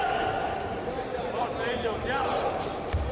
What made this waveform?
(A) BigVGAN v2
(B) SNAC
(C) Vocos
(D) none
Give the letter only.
A